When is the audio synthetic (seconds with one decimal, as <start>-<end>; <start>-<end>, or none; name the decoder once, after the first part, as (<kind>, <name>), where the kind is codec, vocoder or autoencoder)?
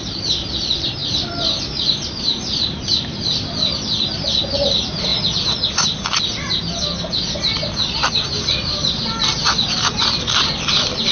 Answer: 0.0-5.1 (vocoder, BigVGAN v2); 8.4-11.1